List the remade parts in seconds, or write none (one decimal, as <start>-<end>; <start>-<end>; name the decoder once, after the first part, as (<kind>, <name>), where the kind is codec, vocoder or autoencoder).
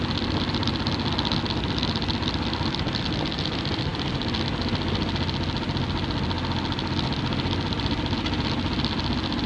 none